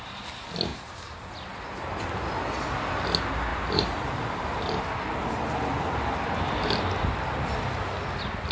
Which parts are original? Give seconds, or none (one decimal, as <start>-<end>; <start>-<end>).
0.0-0.7; 1.3-3.5; 4.8-8.5